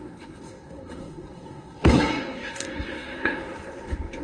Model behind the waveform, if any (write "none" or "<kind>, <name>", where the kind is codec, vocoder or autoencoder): codec, SNAC